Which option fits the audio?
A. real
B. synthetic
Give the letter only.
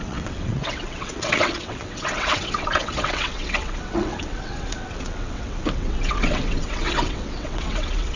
B